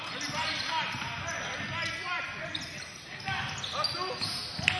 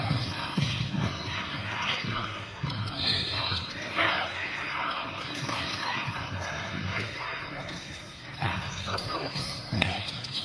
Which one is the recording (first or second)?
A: first